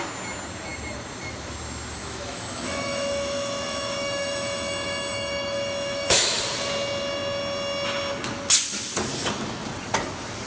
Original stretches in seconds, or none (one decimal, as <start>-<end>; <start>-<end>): 0.0-2.0; 6.4-10.5